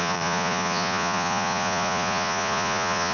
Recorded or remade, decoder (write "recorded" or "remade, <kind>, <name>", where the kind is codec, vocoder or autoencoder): remade, vocoder, Vocos